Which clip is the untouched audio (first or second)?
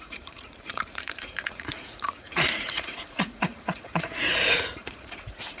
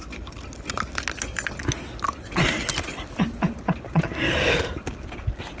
second